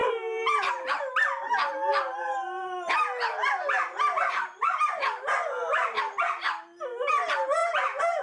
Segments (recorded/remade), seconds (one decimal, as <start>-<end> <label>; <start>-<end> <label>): 0.0-1.0 remade; 1.0-8.2 recorded